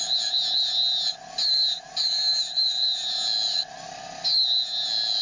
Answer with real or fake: real